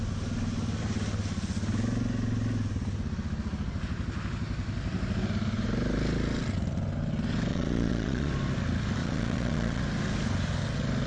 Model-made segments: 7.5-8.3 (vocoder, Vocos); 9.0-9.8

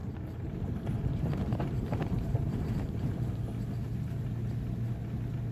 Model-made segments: 0.0-3.3 (vocoder, BigVGAN v2)

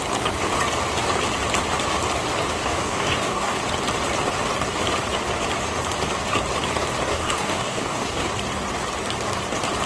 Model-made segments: 2.6-3.5 (codec, DAC); 7.1-8.3

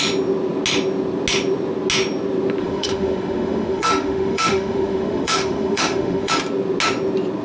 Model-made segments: 2.6-6.3 (autoencoder, DAC-VAE)

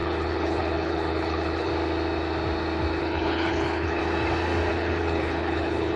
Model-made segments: 0.0-1.7 (codec, HILCodec); 3.0-4.0; 4.7-6.0

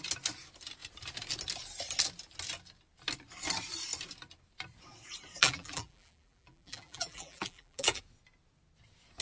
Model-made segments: 5.4-8.0 (vocoder, BigVGAN v2)